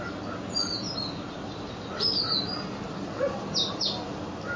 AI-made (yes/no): no